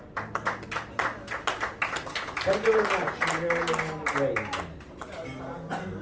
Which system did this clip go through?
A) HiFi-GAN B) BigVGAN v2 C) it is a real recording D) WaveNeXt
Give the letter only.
C